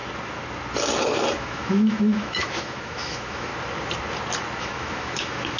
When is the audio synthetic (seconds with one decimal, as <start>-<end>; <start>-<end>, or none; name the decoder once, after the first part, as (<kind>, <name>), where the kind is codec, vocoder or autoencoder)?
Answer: 1.4-3.5 (autoencoder, DAC-VAE); 4.6-5.6

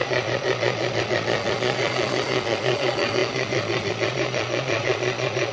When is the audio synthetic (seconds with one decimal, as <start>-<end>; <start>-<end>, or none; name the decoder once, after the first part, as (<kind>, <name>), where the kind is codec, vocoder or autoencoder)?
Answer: 0.0-5.5 (vocoder, Vocos)

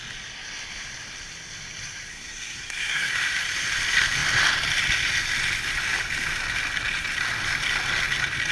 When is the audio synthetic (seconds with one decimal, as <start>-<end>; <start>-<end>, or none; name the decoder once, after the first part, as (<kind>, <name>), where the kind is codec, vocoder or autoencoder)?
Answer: 2.1-3.1 (codec, SNAC)

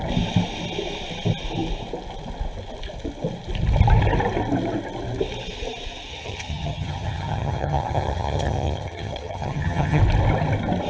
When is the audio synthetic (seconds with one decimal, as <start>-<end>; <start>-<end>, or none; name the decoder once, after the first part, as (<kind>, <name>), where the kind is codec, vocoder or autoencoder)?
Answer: 6.1-10.0 (vocoder, HiFi-GAN)